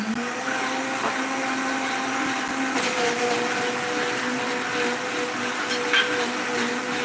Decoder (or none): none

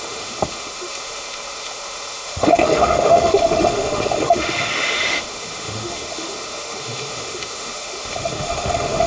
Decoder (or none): autoencoder, DAC-VAE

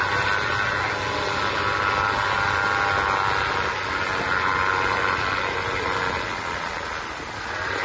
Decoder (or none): none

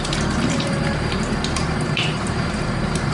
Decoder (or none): vocoder, BigVGAN v2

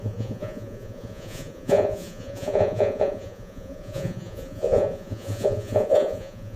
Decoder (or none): vocoder, Vocos